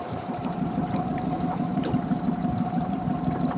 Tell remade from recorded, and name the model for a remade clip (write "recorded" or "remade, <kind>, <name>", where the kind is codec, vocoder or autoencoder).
remade, vocoder, BigVGAN v2